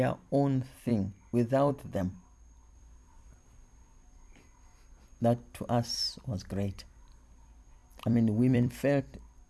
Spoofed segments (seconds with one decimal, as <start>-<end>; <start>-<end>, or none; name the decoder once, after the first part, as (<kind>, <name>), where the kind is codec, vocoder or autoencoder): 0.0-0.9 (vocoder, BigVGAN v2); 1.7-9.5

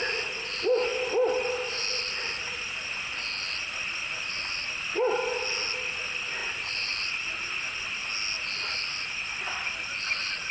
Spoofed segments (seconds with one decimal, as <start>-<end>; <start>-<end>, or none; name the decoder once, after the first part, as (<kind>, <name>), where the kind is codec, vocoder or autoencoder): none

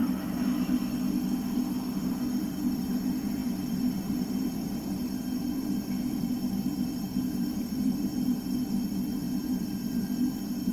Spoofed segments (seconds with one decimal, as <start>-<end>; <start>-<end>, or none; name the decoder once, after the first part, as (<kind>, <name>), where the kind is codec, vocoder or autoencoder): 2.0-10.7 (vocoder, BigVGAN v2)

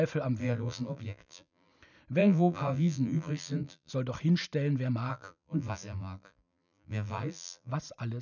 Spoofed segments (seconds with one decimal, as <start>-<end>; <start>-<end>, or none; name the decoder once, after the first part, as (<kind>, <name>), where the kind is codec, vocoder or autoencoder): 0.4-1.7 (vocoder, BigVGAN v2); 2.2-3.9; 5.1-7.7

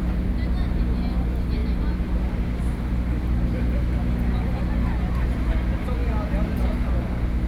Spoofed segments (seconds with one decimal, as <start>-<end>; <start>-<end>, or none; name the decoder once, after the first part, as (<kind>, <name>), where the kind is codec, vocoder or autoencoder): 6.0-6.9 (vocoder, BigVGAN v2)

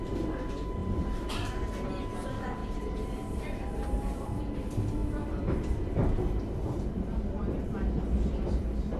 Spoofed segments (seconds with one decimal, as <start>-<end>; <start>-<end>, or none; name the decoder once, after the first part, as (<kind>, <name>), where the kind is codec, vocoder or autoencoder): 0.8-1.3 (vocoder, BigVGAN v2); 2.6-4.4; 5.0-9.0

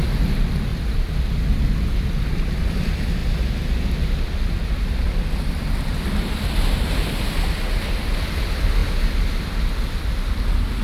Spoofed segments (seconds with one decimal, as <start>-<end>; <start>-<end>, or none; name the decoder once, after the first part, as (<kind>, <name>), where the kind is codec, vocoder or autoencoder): none

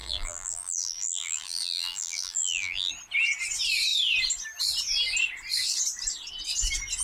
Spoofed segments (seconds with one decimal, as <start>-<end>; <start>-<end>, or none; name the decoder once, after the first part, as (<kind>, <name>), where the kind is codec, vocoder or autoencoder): 0.0-2.9 (vocoder, BigVGAN v2)